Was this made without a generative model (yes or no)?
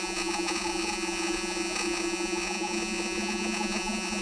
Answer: no